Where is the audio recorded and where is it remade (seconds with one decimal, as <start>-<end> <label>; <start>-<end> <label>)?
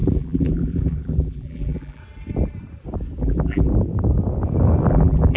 0.0-2.0 remade; 2.0-3.2 recorded; 3.2-3.7 remade; 3.7-4.9 recorded; 4.9-5.4 remade